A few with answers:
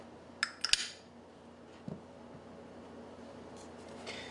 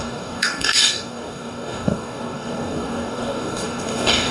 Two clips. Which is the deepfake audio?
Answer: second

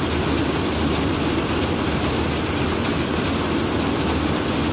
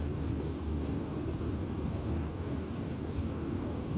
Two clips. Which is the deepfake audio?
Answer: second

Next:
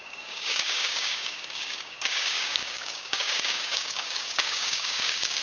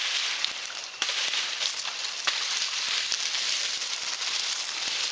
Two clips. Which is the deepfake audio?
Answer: first